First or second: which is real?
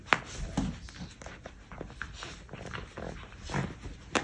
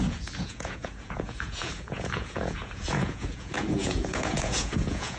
first